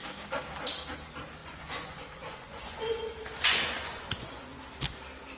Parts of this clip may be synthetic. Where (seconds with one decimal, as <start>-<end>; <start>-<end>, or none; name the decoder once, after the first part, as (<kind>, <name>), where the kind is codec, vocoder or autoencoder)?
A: 1.4-4.6 (vocoder, Vocos)